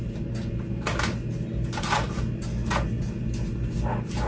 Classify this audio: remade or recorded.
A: recorded